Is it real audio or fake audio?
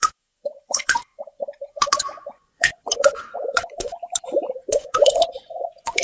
fake